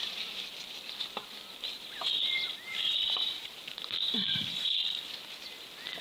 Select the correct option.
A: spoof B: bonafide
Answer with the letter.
A